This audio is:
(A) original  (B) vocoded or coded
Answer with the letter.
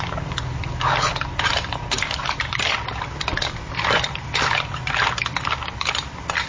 B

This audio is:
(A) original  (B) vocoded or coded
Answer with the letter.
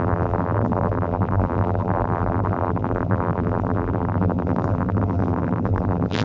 B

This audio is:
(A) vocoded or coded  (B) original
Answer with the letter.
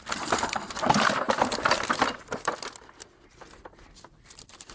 A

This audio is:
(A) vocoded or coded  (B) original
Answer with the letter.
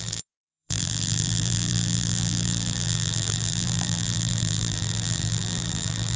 A